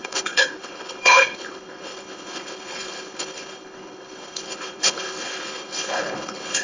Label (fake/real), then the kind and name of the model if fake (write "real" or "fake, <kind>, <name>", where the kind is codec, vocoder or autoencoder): fake, codec, HILCodec